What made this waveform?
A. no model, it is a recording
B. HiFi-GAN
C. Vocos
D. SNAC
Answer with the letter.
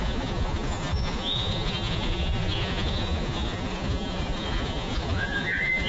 C